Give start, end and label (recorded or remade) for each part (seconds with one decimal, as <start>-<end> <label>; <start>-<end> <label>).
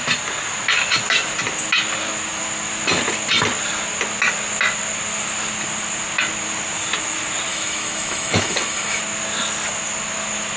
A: 0.0-7.5 recorded; 7.5-9.0 remade; 9.0-10.6 recorded